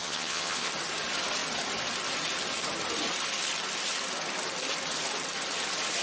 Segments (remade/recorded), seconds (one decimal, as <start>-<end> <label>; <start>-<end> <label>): 0.0-0.7 remade; 0.7-6.0 recorded